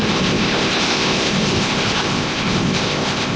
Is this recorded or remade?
remade